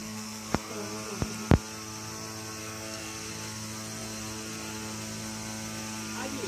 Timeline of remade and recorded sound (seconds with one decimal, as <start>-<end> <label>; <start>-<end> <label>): 0.0-0.7 remade; 0.7-2.6 recorded; 2.6-3.3 remade; 3.3-6.5 recorded